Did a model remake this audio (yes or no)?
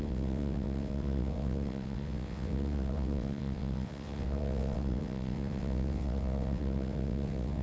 yes